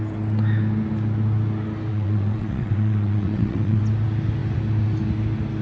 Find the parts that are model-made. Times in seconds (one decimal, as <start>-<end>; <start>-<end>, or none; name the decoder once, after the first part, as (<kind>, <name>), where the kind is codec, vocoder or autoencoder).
1.9-3.8 (vocoder, WaveNeXt)